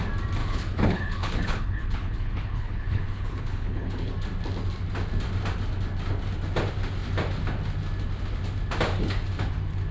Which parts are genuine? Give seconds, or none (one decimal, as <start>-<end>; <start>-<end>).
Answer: 0.0-0.4; 4.1-9.9